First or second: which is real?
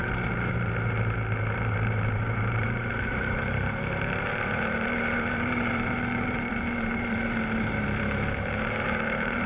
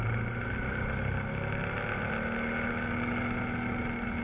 second